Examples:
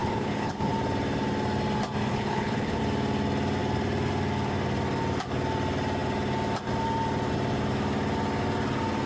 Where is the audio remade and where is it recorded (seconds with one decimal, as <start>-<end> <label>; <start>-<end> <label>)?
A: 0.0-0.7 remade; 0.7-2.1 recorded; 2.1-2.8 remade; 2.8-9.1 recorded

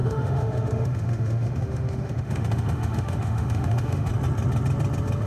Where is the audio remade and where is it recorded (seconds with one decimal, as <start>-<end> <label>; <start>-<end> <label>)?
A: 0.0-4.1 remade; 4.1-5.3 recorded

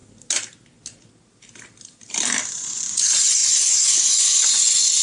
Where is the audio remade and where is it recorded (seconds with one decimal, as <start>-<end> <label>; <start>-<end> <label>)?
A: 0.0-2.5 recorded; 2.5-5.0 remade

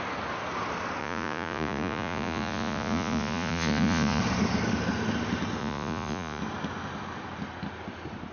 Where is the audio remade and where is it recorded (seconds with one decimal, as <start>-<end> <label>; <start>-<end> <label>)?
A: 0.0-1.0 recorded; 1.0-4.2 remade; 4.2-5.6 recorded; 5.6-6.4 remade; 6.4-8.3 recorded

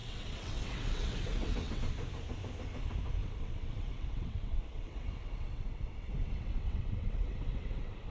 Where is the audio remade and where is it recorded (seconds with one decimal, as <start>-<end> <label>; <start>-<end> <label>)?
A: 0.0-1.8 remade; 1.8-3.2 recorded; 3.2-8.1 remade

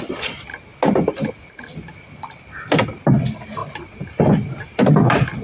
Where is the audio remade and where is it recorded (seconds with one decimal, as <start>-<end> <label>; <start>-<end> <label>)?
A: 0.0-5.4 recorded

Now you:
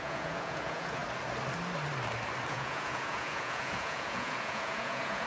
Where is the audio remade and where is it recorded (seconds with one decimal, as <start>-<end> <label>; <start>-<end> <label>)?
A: 0.0-1.0 remade; 1.0-2.5 recorded; 2.5-5.3 remade